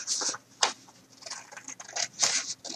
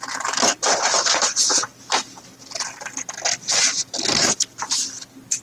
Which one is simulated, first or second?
second